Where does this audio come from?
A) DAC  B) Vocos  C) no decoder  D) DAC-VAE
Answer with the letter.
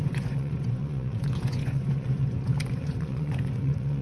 B